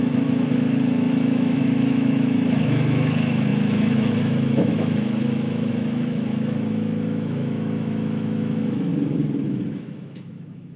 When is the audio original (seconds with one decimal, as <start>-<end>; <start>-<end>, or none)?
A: 8.9-9.5